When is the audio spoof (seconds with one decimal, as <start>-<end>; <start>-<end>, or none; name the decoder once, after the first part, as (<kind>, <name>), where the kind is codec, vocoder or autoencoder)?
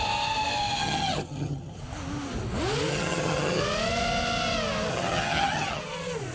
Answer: 0.8-1.8 (vocoder, HiFi-GAN); 2.9-3.6; 4.9-5.8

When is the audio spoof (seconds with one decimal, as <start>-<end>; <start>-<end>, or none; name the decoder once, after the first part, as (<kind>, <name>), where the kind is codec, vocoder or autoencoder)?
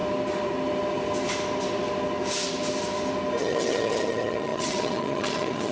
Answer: 3.4-5.7 (vocoder, HiFi-GAN)